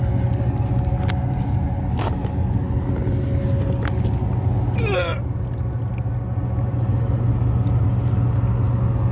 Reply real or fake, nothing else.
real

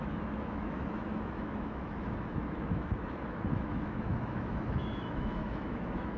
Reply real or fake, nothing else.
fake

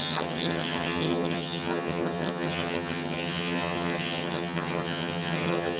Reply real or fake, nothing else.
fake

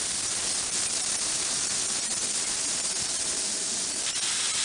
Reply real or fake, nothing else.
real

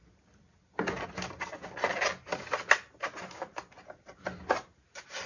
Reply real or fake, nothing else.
real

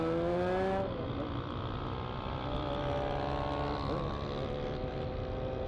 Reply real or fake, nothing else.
real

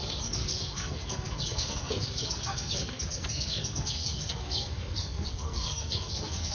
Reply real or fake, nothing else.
fake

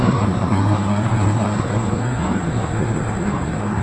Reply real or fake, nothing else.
fake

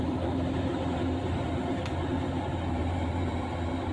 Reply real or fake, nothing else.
fake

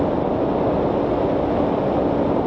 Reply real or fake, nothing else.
real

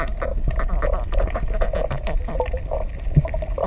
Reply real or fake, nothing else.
fake